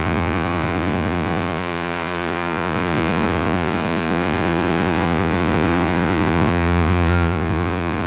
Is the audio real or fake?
fake